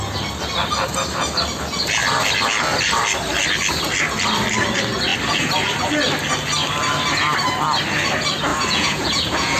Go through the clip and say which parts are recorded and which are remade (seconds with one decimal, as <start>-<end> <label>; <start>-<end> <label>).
0.0-8.5 recorded; 8.5-9.6 remade